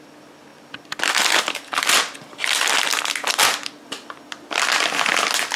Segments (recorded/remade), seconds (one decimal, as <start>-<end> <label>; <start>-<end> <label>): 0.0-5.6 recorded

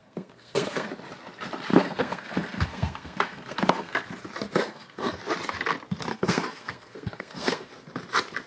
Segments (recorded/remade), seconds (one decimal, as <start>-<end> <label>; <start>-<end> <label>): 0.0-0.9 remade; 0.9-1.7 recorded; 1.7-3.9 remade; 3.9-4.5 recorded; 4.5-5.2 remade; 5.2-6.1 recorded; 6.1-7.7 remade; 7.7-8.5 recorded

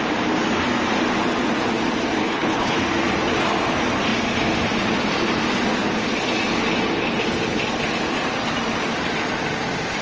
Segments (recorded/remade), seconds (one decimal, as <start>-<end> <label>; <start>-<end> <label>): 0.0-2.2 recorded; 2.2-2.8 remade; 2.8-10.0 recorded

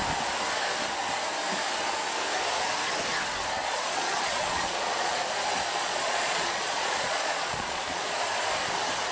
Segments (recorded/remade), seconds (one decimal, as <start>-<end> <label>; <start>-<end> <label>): 0.0-3.6 recorded; 3.6-5.1 remade; 5.1-5.7 recorded; 5.7-8.2 remade; 8.2-9.1 recorded

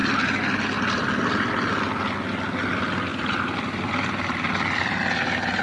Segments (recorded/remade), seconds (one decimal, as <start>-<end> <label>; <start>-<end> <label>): 0.0-0.7 remade; 0.7-3.1 recorded; 3.1-5.0 remade; 5.0-5.6 recorded

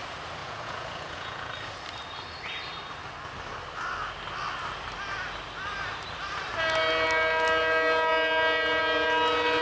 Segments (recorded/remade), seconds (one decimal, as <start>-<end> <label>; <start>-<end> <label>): 0.0-0.4 recorded; 0.4-1.5 remade; 1.5-9.6 recorded